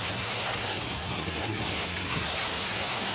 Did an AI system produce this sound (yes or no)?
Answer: yes